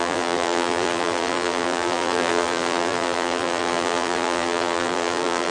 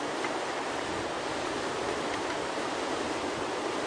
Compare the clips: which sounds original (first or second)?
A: second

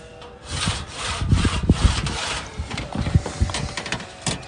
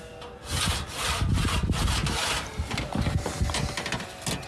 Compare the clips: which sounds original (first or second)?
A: second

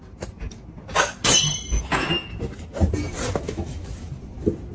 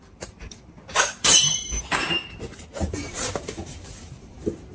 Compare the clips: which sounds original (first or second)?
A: first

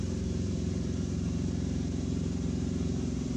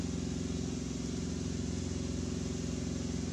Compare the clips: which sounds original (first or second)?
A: second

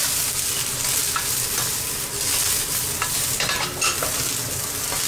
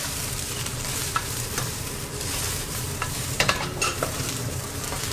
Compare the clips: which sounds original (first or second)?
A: first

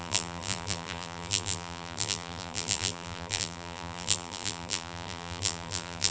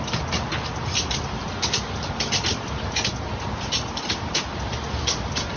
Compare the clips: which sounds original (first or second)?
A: second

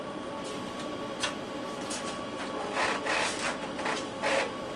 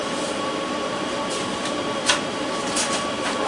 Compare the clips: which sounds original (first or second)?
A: first